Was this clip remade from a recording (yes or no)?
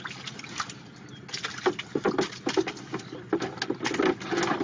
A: no